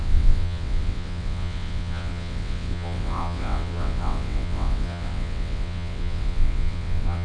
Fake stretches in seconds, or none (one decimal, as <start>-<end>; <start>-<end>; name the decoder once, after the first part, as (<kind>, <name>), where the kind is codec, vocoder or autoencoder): 0.0-7.2 (vocoder, WaveNeXt)